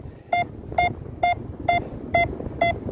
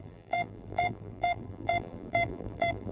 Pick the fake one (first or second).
second